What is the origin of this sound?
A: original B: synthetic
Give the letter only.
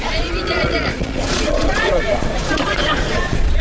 B